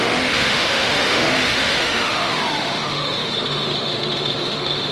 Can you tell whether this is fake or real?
fake